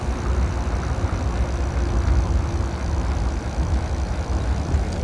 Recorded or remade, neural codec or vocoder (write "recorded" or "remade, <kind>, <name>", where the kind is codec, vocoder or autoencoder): recorded